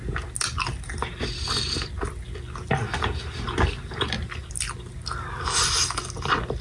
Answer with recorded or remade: recorded